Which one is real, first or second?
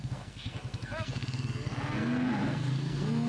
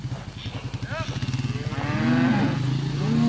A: second